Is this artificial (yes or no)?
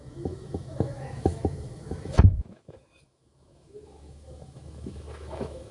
yes